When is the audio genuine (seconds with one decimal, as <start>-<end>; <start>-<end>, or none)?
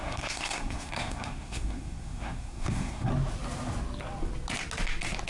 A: 3.1-5.3